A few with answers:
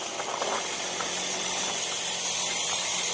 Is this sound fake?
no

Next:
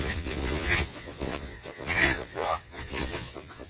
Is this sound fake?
yes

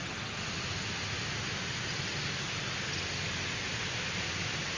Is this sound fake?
no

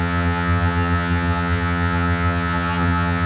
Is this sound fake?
yes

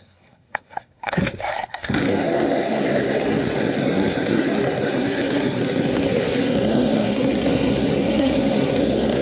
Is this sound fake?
yes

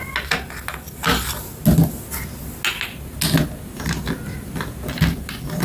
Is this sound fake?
no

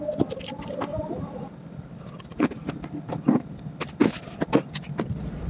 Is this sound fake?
no